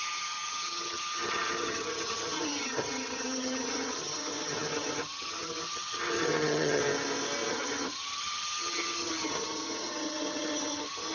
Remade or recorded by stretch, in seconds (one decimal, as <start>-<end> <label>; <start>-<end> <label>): 0.0-6.8 remade; 6.8-7.5 recorded; 7.5-11.1 remade

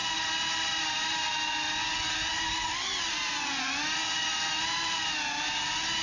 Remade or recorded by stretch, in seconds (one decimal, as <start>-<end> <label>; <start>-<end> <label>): 0.0-6.0 recorded